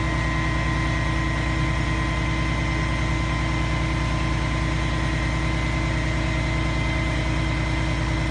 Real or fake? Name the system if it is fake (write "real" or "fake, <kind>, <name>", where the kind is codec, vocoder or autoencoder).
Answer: real